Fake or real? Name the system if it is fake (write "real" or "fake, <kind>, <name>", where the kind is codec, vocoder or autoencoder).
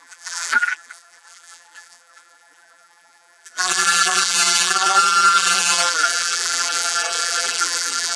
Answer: fake, vocoder, BigVGAN v2